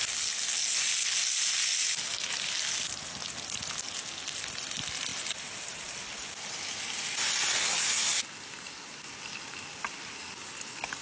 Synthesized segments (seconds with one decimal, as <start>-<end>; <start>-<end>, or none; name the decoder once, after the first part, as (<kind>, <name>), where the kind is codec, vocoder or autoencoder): none